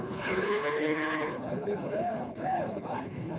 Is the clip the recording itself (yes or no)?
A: no